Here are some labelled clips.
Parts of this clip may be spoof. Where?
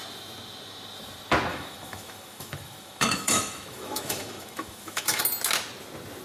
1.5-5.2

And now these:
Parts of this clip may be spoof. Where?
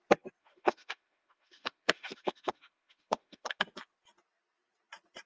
0.4-3.6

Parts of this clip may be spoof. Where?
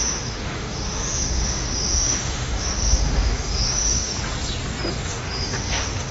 0.0-4.1; 4.9-6.1